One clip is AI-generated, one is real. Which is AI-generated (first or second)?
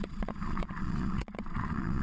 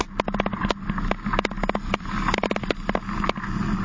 first